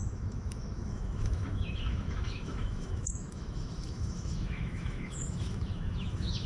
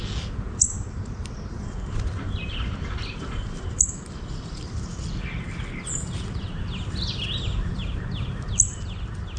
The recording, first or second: second